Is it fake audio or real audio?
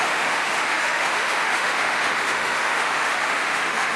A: fake